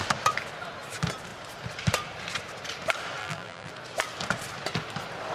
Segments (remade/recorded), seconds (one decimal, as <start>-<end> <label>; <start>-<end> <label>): 0.0-3.2 recorded; 3.2-3.7 remade; 3.7-5.3 recorded